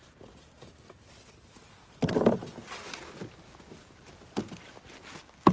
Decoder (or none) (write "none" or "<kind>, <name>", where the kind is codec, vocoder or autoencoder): none